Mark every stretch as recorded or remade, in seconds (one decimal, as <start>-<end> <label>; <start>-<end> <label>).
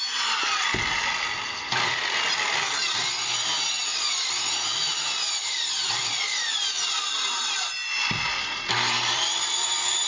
0.0-4.9 remade; 4.9-5.5 recorded; 5.5-10.1 remade